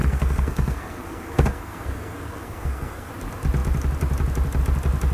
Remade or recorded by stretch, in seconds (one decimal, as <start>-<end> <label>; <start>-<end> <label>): 0.0-3.1 remade; 3.1-5.1 recorded